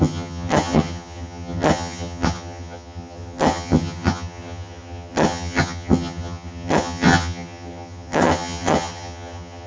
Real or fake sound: fake